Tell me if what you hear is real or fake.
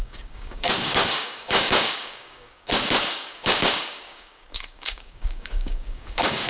fake